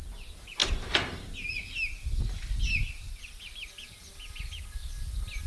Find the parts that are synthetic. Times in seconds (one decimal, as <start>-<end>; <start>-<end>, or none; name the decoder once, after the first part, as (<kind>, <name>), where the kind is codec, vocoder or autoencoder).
0.6-3.9 (vocoder, BigVGAN v2)